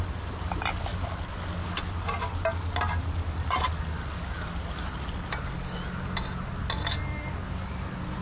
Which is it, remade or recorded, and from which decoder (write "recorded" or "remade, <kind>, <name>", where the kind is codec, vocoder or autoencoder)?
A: recorded